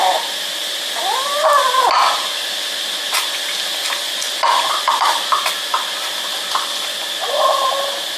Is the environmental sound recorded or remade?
recorded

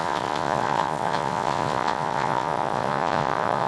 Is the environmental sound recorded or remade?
remade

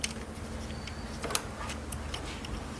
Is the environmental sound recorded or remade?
recorded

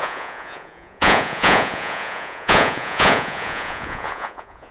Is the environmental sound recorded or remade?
remade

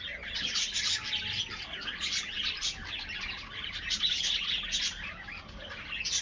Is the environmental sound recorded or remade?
recorded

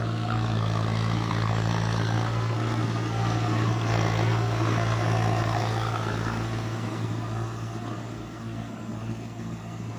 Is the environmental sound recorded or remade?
remade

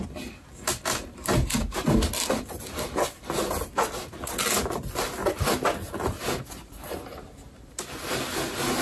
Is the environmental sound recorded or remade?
recorded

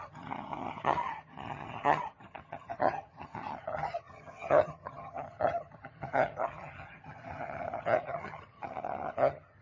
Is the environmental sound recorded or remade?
remade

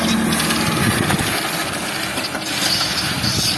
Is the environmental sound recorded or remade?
recorded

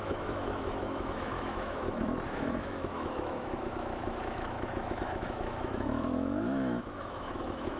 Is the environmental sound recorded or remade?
remade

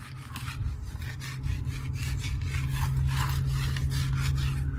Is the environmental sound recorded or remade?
recorded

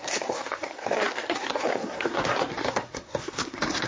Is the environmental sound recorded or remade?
remade